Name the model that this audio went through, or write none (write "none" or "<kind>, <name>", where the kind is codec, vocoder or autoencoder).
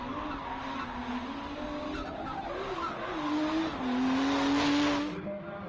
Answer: none